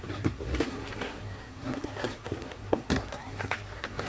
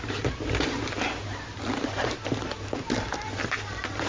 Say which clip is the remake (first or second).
first